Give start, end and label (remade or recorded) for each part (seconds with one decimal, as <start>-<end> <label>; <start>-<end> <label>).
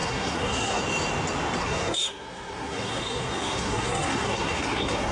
0.0-0.8 remade; 0.8-1.6 recorded; 1.6-5.1 remade